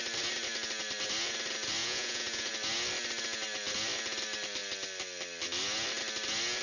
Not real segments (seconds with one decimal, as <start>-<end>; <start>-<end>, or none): 1.8-2.5